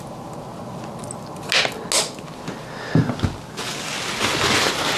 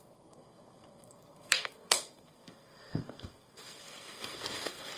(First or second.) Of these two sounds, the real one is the first